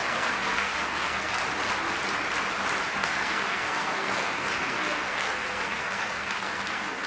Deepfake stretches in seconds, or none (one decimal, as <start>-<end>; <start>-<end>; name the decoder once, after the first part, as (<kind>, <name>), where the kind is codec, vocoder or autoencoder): 0.0-1.4 (codec, SNAC); 3.0-7.1